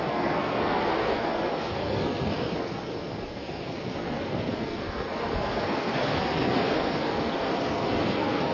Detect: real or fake fake